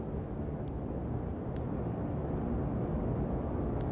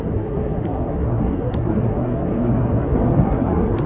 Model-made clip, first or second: second